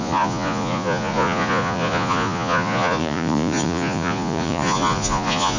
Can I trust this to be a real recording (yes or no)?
no